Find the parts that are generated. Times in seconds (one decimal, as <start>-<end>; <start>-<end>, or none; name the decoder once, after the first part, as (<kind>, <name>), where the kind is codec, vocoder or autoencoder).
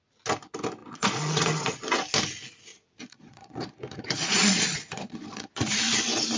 0.8-2.0 (vocoder, Vocos); 2.7-5.7